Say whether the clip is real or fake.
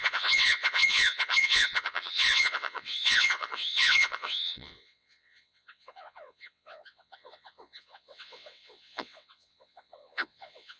fake